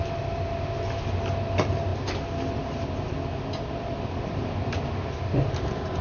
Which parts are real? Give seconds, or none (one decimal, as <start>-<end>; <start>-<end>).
0.0-6.0